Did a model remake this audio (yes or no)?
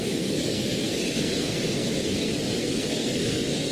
yes